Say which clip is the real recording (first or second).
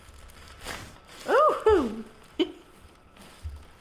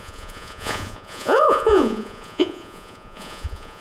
first